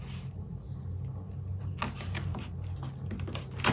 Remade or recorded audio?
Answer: recorded